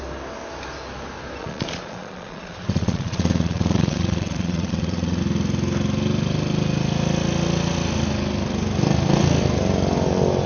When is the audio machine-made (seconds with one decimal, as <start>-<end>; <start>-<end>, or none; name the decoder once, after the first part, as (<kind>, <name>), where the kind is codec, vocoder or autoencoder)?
1.4-5.2 (vocoder, Vocos)